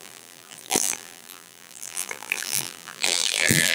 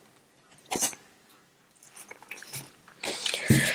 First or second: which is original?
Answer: second